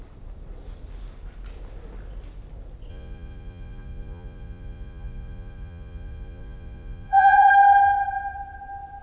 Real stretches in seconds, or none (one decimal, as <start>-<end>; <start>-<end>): 0.0-2.9; 7.5-9.0